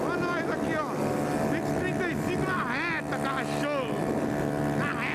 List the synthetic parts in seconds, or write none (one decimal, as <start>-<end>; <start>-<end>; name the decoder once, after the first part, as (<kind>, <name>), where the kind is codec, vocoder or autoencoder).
none